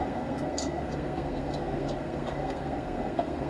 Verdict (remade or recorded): remade